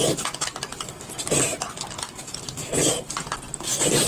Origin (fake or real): real